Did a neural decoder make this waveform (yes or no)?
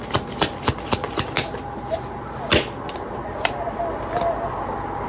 no